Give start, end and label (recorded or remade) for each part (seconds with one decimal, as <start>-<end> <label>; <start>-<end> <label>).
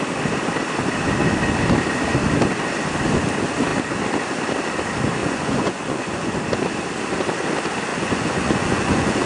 0.0-5.2 recorded; 5.2-6.3 remade; 6.3-7.9 recorded; 7.9-9.3 remade